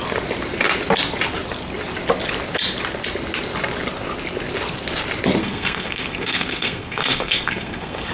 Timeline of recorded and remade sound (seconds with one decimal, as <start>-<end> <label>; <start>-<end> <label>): 0.0-5.4 recorded; 5.4-8.1 remade